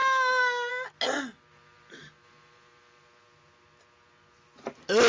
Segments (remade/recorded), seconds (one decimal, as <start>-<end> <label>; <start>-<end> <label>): 0.0-5.1 recorded